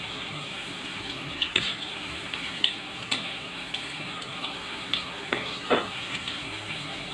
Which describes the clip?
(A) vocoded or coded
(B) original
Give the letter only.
A